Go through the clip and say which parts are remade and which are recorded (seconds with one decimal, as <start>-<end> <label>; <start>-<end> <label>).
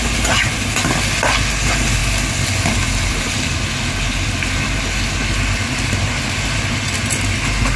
0.0-7.8 recorded